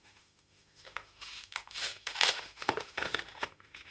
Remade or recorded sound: remade